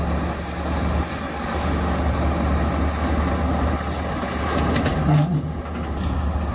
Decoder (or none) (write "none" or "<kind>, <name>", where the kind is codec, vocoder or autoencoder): none